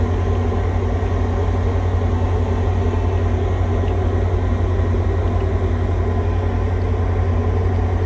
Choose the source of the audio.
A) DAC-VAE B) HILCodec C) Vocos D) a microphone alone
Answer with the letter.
D